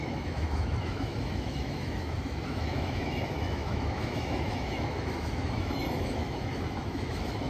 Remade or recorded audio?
remade